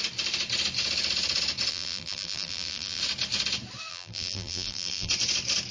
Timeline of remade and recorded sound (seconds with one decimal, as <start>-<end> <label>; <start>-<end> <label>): 0.0-1.7 recorded; 1.7-3.0 remade; 3.0-3.9 recorded; 3.9-5.1 remade; 5.1-5.7 recorded